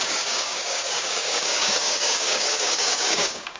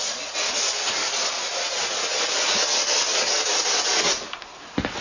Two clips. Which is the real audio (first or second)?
second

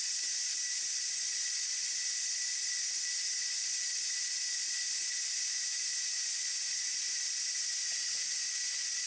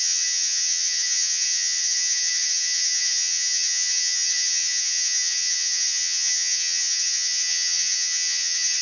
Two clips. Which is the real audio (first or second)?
first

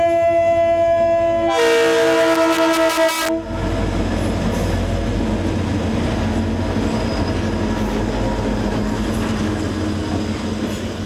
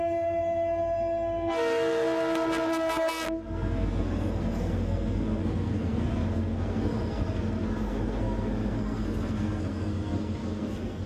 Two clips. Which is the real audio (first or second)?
first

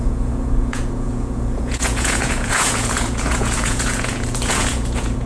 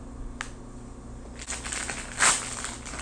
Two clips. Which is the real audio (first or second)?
second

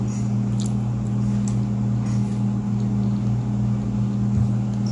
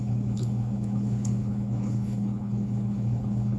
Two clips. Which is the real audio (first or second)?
first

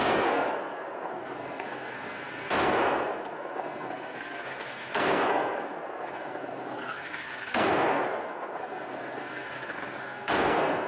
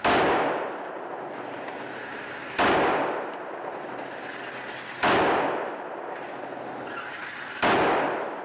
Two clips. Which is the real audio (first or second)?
second